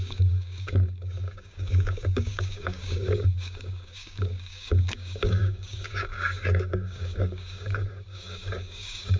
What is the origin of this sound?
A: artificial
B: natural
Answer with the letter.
A